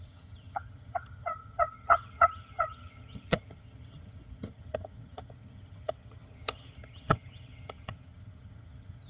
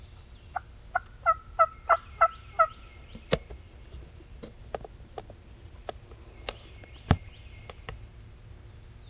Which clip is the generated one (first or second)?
first